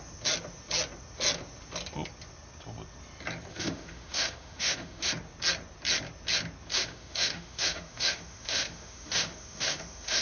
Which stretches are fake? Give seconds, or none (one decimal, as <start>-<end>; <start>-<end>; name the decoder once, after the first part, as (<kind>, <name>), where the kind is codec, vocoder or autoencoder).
3.5-5.1 (autoencoder, DAC-VAE); 6.7-10.2